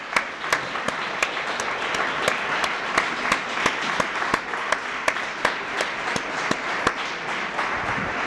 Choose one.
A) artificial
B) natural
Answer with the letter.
B